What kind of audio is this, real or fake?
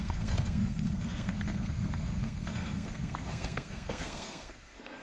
fake